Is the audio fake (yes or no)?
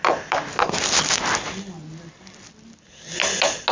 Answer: no